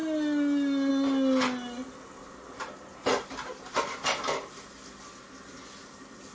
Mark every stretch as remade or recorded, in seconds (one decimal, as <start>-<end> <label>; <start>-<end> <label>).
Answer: 0.0-6.3 recorded